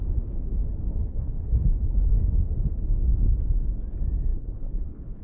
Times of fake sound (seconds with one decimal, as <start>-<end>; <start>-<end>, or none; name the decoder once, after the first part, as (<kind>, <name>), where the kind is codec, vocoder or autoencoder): 0.9-2.1 (codec, HILCodec); 4.3-5.2